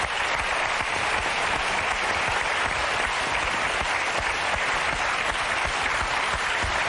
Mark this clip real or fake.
real